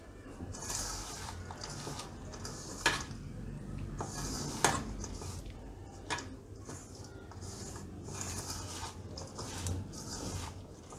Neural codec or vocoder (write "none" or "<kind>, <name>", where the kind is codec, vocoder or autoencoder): none